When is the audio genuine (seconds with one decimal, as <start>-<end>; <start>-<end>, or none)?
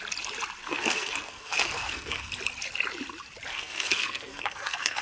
0.0-0.6; 2.3-3.5